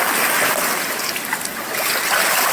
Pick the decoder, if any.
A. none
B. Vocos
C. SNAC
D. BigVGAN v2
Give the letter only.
A